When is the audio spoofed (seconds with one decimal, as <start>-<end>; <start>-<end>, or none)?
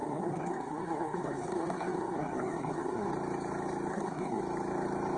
0.0-3.1; 3.9-4.4